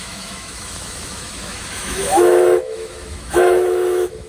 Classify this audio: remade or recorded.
remade